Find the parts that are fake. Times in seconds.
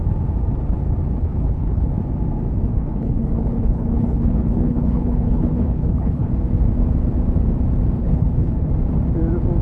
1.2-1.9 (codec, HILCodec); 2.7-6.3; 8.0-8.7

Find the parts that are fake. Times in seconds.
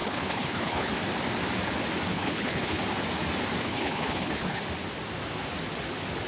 0.0-0.9 (codec, HILCodec); 2.1-2.8; 3.6-4.6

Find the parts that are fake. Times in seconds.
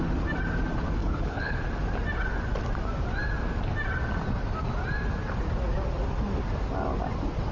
1.0-1.6 (codec, HILCodec)